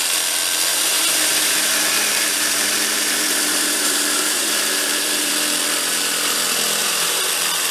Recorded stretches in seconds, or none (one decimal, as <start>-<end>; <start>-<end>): 0.0-0.7; 5.3-6.8; 7.3-7.7